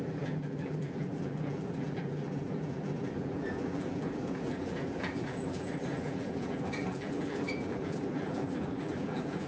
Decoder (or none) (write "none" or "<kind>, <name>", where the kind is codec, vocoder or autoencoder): vocoder, BigVGAN v2